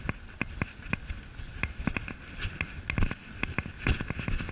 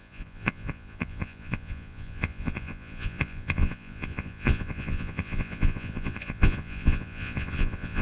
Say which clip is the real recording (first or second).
first